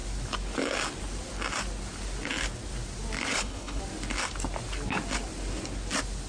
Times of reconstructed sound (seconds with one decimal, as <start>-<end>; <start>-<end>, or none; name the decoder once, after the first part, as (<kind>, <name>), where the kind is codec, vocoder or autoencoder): 3.3-3.8 (codec, HILCodec)